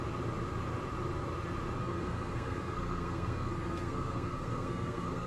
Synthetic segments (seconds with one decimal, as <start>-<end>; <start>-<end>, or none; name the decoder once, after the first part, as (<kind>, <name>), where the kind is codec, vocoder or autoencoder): 1.8-5.3 (codec, SNAC)